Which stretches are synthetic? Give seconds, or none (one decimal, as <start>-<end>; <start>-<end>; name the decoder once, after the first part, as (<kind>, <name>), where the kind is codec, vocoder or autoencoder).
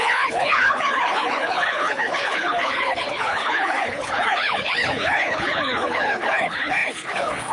0.0-7.5 (codec, HILCodec)